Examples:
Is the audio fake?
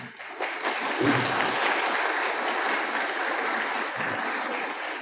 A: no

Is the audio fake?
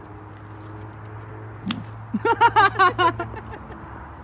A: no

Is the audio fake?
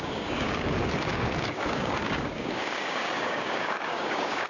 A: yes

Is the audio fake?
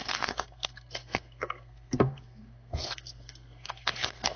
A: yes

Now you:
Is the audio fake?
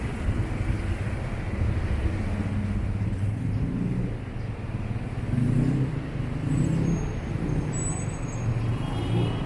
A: no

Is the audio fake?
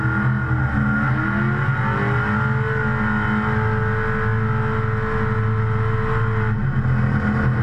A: no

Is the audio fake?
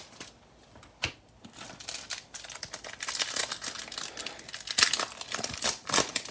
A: no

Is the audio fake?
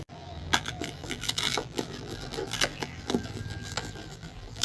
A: yes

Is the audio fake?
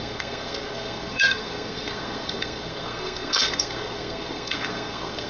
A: yes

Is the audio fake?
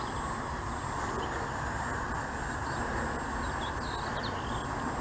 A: no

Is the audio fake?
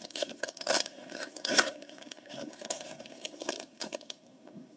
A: yes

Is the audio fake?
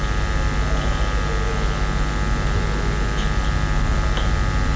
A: no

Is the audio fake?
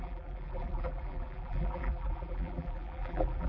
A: yes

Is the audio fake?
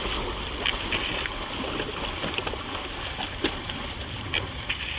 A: no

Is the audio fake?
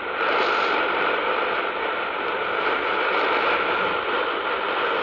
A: no